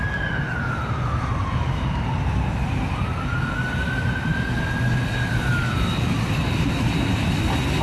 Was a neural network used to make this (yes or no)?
no